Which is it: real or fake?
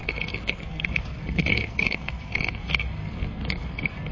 fake